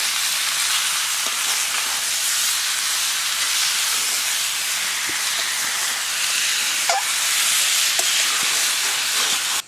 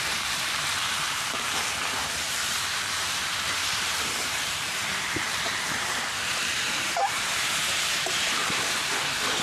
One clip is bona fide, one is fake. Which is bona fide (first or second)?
first